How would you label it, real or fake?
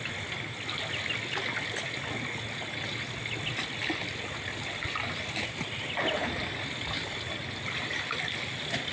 real